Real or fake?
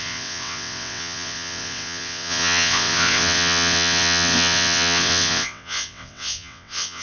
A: fake